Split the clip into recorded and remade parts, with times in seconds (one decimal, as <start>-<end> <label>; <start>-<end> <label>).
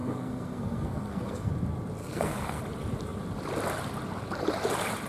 0.0-1.5 remade; 1.5-2.0 recorded; 2.0-2.6 remade; 2.6-5.1 recorded